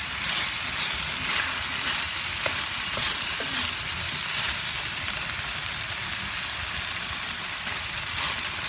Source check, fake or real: real